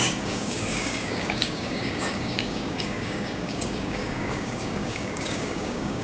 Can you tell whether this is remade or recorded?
remade